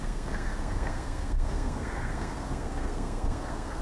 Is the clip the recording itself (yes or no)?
no